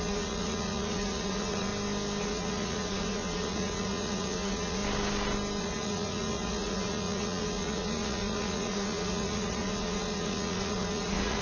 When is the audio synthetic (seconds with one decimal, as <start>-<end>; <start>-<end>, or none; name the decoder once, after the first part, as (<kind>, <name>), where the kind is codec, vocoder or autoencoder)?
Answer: 0.0-1.7 (vocoder, Vocos); 2.2-4.8; 5.6-11.4